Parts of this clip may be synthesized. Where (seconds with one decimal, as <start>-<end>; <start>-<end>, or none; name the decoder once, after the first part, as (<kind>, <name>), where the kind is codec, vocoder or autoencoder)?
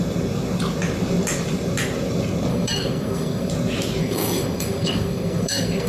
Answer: 2.5-3.5 (codec, SNAC); 4.0-5.9